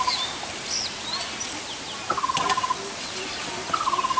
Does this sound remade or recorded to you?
recorded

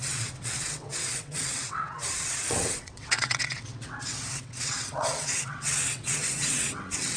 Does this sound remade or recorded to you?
remade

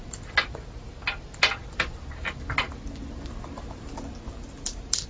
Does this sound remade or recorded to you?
recorded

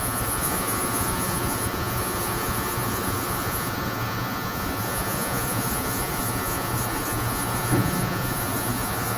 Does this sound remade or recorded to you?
remade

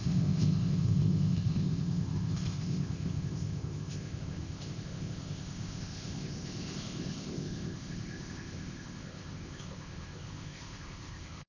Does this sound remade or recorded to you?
remade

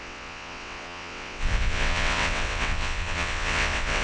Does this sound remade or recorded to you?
remade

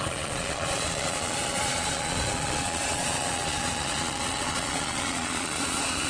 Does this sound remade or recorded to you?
remade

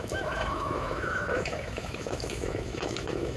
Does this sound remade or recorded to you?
remade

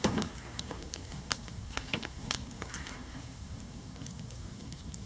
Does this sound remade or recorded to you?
remade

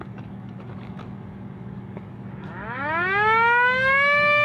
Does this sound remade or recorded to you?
remade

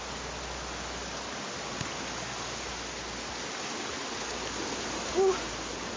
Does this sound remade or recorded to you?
recorded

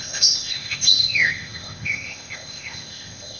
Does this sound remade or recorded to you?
remade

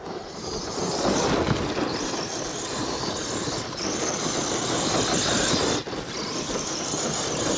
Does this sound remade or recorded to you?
recorded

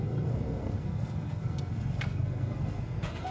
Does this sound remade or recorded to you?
remade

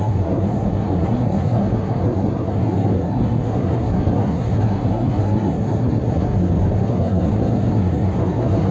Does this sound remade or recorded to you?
remade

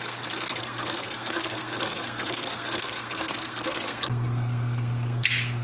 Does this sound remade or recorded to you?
remade